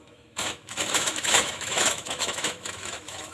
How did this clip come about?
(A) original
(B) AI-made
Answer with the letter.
B